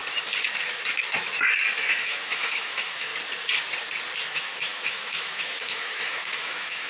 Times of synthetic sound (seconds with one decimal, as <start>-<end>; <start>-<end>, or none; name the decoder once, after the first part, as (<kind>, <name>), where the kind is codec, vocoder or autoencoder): 2.0-3.1 (autoencoder, DAC-VAE); 4.3-6.9